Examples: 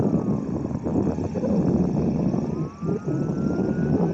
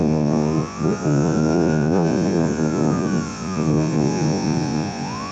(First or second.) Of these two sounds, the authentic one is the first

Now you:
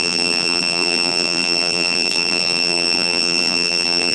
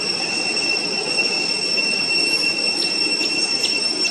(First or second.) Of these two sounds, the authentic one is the second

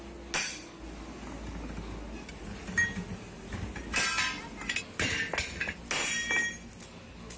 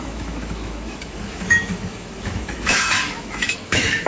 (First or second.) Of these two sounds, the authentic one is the first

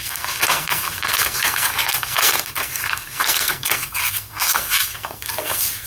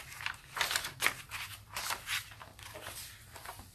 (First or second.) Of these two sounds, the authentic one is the second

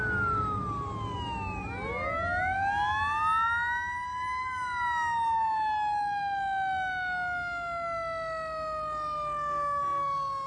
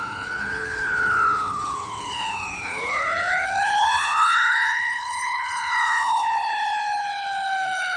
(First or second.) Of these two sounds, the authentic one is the first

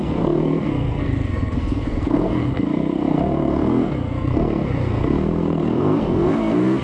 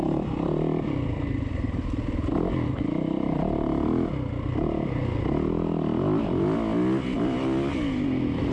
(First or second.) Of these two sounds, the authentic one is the second